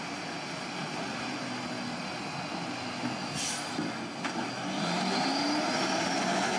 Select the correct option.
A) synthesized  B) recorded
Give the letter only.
B